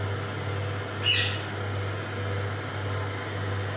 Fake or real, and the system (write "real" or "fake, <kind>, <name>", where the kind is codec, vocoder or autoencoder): real